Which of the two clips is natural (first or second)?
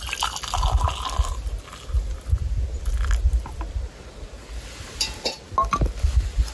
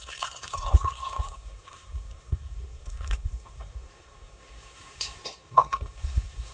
first